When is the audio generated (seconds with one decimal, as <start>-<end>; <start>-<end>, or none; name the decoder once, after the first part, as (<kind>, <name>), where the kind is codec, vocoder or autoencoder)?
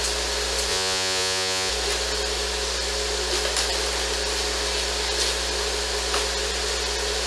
0.7-1.7 (vocoder, Vocos)